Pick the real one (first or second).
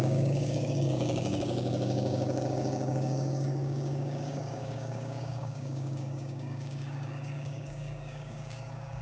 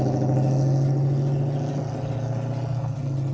second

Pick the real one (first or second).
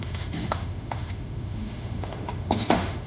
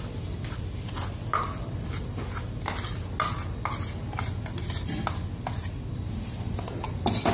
second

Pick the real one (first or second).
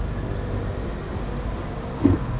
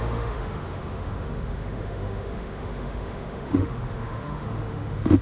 first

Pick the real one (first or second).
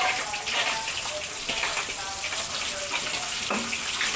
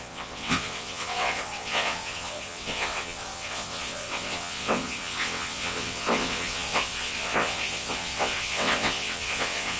first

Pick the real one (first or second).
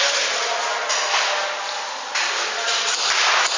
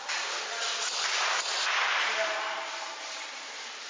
first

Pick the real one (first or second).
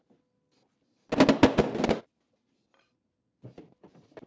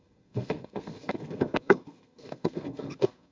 first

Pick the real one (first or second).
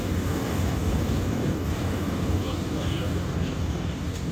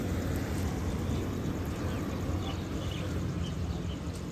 second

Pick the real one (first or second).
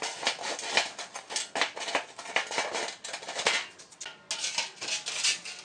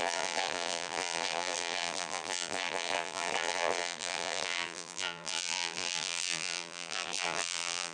first